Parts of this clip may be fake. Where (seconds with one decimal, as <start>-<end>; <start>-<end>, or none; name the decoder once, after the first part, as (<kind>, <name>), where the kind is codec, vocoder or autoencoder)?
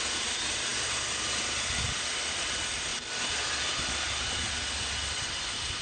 none